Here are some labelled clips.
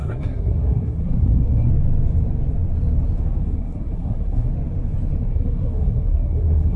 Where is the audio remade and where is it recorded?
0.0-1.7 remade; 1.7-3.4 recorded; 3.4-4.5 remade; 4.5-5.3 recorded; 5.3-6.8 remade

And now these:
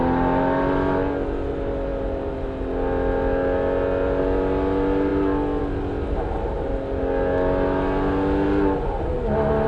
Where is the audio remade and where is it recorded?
0.0-9.7 recorded

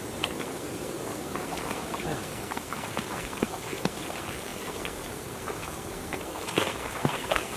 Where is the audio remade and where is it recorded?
0.0-7.6 remade

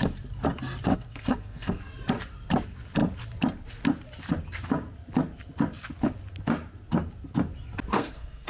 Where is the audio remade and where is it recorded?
0.0-0.9 recorded; 0.9-1.8 remade; 1.8-7.9 recorded; 7.9-8.5 remade

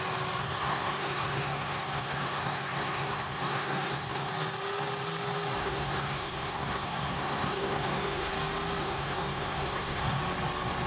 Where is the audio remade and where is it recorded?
0.0-0.4 recorded; 0.4-4.3 remade; 4.3-5.6 recorded; 5.6-8.3 remade; 8.3-8.8 recorded; 8.8-10.2 remade; 10.2-10.9 recorded

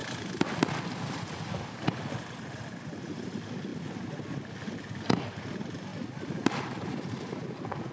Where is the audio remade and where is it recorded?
0.0-7.9 recorded